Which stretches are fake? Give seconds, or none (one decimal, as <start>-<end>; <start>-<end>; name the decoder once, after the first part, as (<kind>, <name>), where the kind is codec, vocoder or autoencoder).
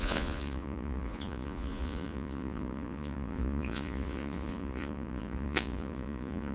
0.0-6.5 (vocoder, Vocos)